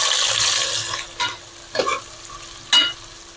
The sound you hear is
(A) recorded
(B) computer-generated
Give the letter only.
A